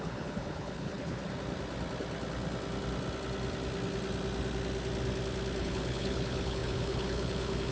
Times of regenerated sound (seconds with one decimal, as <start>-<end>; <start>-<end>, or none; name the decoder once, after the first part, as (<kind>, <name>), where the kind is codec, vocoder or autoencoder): 0.0-1.2 (codec, HILCodec); 5.6-7.7